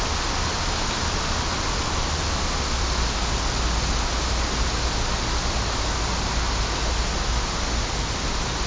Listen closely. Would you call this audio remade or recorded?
recorded